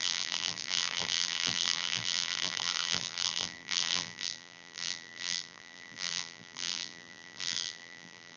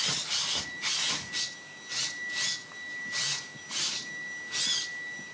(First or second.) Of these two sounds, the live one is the second